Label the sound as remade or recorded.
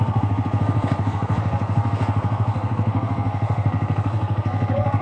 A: remade